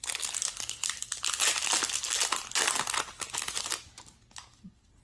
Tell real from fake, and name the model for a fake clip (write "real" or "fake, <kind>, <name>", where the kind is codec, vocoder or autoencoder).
real